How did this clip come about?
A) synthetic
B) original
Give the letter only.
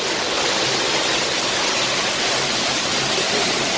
B